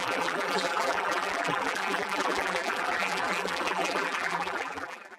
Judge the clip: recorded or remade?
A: remade